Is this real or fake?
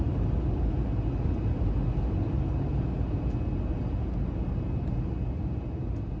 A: real